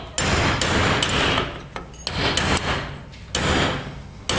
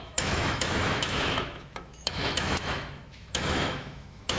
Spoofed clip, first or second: second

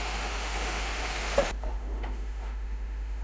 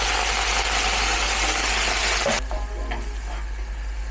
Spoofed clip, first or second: first